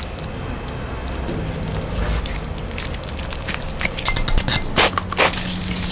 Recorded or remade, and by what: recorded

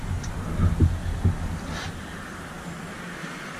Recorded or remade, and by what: recorded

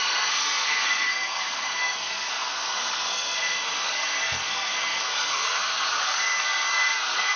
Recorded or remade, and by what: remade, codec, SNAC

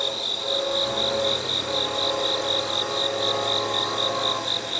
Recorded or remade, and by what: recorded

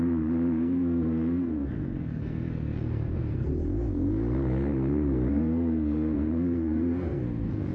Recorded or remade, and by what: remade, codec, SNAC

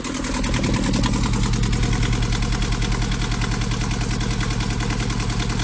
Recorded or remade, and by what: recorded